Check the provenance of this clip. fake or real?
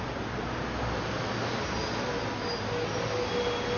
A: real